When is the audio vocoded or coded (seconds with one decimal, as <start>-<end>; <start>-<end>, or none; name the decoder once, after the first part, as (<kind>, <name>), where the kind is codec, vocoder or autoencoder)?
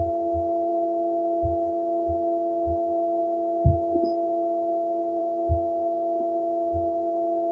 none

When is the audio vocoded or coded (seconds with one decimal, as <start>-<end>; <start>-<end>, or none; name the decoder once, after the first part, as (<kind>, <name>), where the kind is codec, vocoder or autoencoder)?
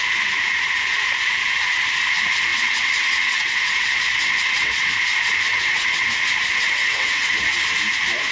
2.5-4.9 (vocoder, WaveNeXt); 5.5-6.1; 6.5-7.3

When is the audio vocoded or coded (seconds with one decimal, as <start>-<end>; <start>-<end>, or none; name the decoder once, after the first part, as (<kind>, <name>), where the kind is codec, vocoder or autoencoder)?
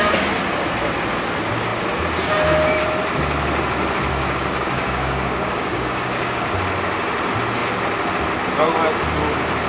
4.1-6.5 (codec, DAC)